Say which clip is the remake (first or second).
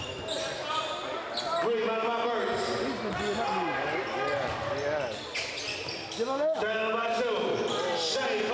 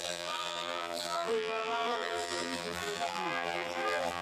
second